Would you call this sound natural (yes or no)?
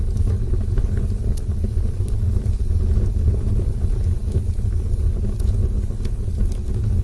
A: yes